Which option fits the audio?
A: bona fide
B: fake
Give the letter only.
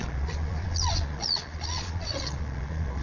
B